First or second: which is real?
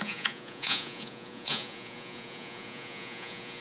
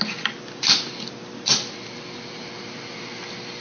second